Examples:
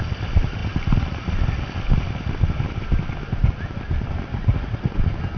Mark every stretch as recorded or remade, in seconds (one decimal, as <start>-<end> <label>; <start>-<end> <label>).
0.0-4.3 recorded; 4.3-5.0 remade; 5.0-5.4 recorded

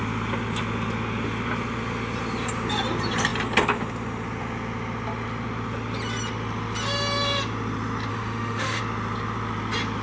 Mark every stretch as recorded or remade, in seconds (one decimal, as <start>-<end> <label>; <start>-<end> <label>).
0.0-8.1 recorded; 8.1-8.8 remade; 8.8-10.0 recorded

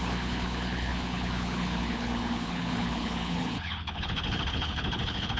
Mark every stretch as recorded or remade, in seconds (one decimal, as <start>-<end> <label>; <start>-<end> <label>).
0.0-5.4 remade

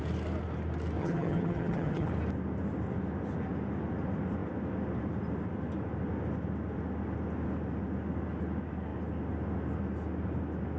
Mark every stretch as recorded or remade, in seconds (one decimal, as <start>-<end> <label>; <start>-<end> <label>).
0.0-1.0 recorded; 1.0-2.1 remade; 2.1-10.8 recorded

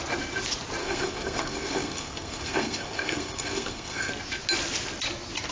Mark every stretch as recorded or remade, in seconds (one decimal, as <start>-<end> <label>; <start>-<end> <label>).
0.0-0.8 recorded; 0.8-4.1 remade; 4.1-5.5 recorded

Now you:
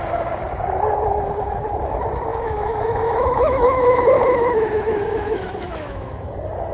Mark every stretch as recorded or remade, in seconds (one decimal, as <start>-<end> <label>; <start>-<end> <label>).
0.0-2.3 recorded; 2.3-6.3 remade; 6.3-6.7 recorded